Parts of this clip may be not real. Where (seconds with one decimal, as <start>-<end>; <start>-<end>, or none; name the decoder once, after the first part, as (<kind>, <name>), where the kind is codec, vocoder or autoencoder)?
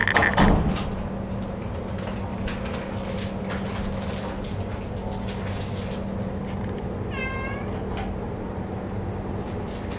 none